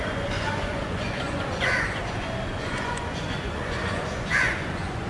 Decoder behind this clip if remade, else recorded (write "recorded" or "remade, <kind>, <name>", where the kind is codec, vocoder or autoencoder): remade, vocoder, Vocos